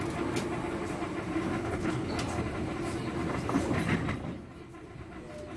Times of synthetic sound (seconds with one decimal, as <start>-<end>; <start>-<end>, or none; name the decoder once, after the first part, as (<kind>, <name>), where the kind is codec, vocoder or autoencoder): 1.6-2.1 (codec, HILCodec)